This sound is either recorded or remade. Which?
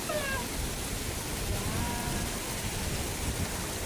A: recorded